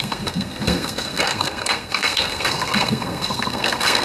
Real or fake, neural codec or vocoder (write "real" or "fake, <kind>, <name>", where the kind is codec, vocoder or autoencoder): fake, codec, SNAC